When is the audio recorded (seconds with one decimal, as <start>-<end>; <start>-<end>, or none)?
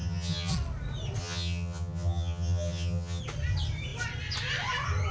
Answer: 0.5-1.2; 3.2-5.1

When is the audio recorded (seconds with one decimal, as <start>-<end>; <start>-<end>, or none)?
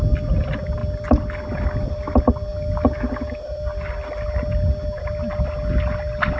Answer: 0.0-6.4